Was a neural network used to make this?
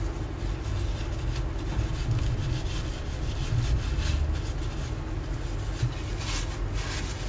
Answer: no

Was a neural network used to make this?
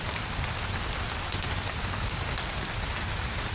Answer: no